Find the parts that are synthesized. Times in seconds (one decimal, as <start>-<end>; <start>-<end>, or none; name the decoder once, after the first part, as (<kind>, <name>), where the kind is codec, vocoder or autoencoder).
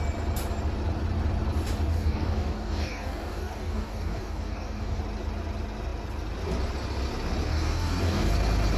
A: 1.9-5.0 (codec, DAC); 7.5-8.3